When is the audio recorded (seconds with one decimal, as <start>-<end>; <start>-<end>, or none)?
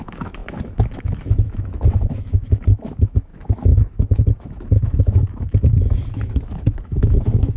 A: none